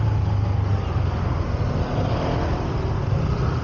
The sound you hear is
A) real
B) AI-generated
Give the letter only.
A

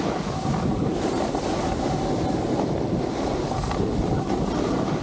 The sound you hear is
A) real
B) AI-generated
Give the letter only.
A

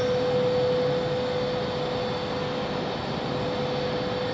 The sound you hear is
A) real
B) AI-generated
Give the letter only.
A